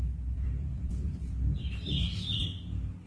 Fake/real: fake